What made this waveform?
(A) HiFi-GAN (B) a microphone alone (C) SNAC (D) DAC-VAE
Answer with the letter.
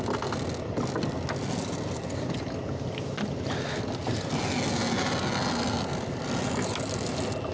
B